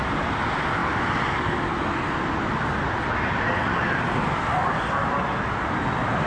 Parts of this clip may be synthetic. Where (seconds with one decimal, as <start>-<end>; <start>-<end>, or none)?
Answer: none